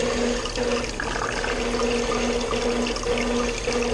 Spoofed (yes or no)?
no